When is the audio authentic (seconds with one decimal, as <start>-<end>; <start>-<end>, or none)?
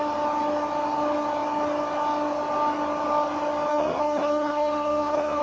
0.0-3.7